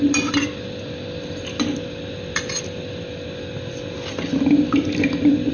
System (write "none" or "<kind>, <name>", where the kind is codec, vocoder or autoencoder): none